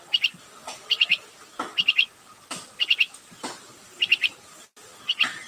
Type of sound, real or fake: real